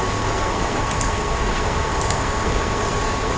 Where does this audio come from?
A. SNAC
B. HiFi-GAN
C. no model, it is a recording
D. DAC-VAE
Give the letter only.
A